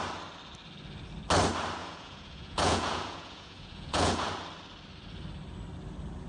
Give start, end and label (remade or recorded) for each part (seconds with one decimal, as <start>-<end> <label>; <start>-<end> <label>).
0.0-1.8 recorded; 1.8-4.3 remade; 4.3-6.3 recorded